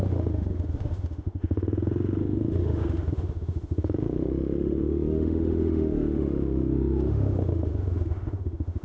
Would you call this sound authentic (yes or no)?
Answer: no